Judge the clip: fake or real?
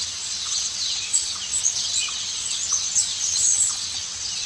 fake